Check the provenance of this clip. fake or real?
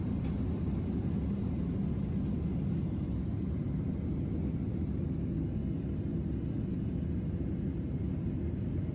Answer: real